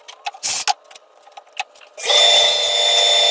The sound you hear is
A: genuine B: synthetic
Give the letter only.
A